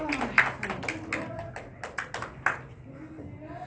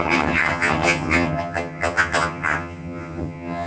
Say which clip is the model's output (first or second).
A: second